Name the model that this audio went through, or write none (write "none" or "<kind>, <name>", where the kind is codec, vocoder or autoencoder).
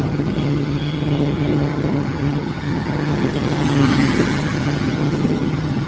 vocoder, HiFi-GAN